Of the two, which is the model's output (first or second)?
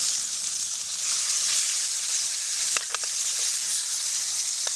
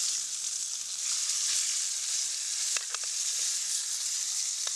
first